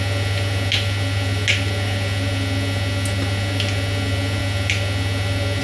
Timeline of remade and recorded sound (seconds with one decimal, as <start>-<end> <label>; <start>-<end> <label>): 0.0-5.6 recorded